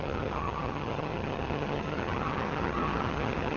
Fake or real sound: fake